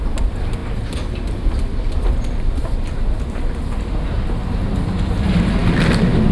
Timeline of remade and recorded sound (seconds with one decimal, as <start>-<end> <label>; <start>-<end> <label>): 0.0-6.3 recorded